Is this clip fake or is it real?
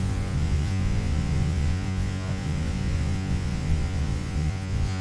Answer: fake